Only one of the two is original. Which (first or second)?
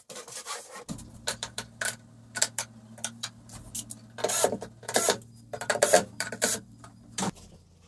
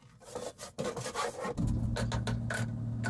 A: second